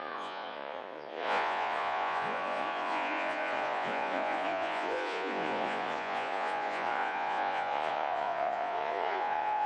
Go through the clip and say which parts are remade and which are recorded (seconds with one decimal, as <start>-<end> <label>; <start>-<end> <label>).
0.0-9.7 remade